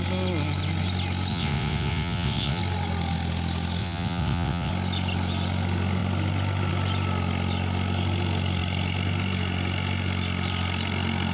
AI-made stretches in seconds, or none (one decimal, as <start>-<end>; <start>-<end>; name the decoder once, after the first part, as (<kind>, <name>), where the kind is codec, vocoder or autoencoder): 1.3-2.6 (vocoder, WaveNeXt); 3.8-4.7